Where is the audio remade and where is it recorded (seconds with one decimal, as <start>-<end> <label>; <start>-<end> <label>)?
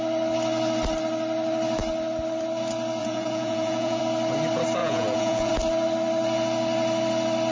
0.0-3.0 recorded; 3.0-4.0 remade; 4.0-4.8 recorded; 4.8-5.5 remade; 5.5-7.5 recorded